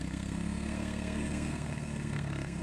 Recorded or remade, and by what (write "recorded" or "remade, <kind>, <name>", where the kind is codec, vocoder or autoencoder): remade, codec, SNAC